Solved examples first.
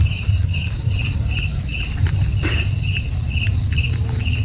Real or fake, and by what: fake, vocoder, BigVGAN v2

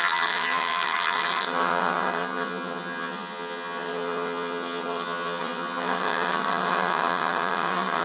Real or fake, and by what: fake, vocoder, HiFi-GAN